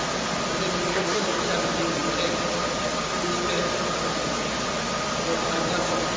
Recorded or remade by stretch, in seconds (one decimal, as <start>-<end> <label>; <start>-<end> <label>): 0.0-0.9 recorded; 0.9-1.4 remade; 1.4-6.2 recorded

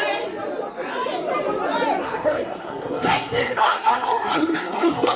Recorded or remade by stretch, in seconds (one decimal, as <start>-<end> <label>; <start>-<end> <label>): 0.0-2.0 recorded; 2.0-5.2 remade